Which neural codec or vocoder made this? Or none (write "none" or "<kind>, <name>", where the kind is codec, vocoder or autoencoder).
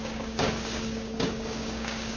codec, DAC